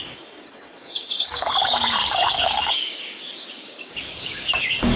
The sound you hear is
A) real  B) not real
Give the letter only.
B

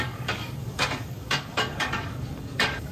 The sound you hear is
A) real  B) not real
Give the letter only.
B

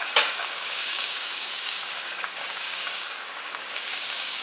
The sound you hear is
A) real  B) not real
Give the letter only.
B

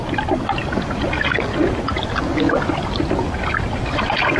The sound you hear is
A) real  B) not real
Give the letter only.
A